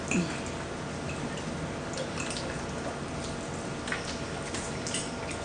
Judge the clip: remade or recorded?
recorded